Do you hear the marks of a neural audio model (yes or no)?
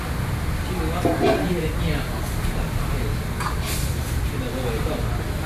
no